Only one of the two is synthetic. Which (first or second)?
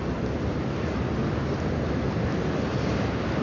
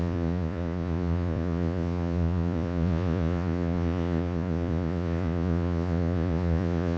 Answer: second